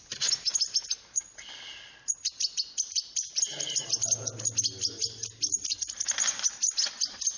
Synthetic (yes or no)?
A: no